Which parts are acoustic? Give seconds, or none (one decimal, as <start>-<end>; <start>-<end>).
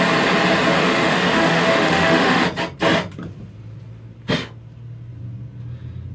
0.0-0.8; 2.4-6.1